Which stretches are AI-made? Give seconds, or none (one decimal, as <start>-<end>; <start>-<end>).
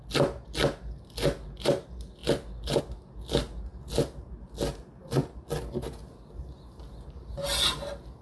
none